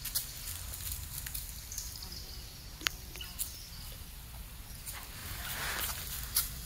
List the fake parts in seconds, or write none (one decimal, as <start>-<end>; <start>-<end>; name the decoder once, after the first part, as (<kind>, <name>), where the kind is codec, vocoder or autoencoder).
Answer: none